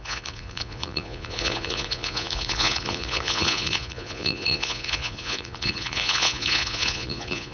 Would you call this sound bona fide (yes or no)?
no